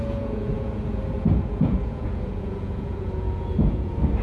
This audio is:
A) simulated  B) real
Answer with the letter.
A